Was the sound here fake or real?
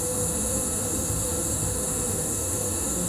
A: fake